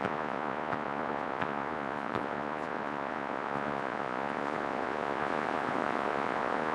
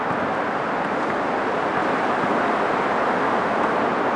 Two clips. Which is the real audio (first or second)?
second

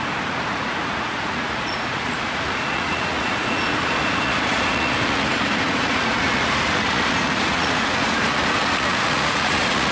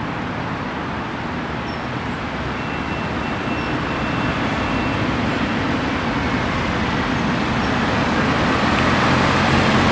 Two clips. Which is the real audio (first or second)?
second